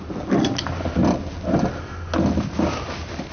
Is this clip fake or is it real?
real